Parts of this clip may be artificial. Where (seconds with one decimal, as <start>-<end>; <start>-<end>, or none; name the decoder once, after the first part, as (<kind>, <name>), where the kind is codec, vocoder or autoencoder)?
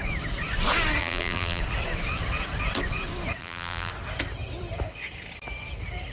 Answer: 1.0-1.6 (vocoder, BigVGAN v2); 3.4-3.9